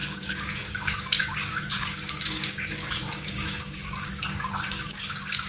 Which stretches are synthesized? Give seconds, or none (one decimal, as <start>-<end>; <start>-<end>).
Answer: 0.0-4.1; 4.7-5.5